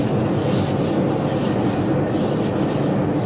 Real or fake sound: real